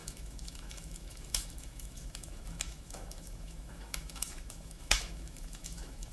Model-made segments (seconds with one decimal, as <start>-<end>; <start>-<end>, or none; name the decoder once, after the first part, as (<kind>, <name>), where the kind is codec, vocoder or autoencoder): 0.0-6.1 (autoencoder, DAC-VAE)